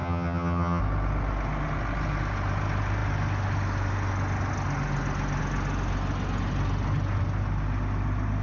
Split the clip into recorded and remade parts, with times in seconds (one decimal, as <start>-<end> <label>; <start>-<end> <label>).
0.0-0.8 remade; 0.8-8.4 recorded